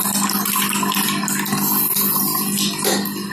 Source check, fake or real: real